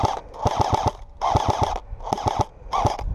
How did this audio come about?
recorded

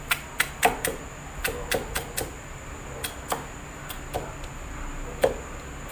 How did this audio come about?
recorded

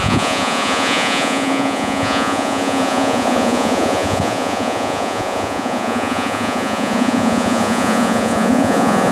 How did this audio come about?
remade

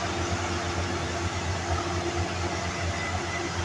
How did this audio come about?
recorded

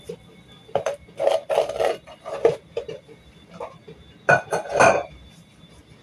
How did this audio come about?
remade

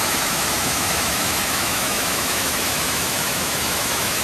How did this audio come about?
remade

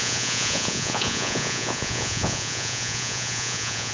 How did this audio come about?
remade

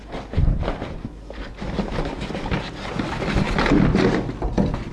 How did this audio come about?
recorded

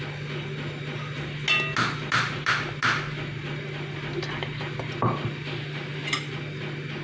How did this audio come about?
recorded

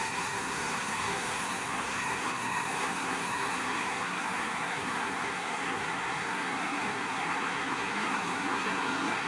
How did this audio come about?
remade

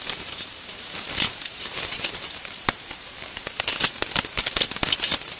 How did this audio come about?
remade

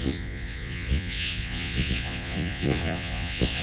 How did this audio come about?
remade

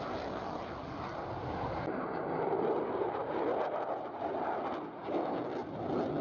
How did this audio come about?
recorded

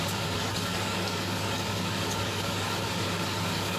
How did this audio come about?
remade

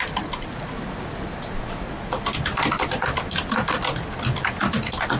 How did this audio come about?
recorded